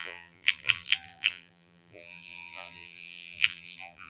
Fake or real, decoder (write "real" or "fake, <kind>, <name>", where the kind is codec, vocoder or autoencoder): fake, vocoder, BigVGAN v2